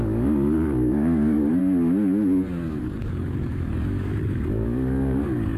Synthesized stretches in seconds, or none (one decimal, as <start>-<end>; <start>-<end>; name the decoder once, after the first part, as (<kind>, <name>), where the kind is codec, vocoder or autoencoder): 0.0-1.6 (codec, DAC); 2.8-5.6